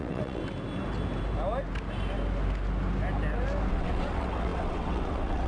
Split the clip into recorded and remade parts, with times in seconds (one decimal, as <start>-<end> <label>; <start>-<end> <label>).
0.0-0.4 remade; 0.4-3.7 recorded; 3.7-5.5 remade